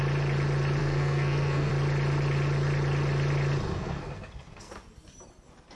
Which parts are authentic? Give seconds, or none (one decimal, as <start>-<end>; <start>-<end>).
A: 0.0-0.8; 1.7-3.7; 4.7-5.8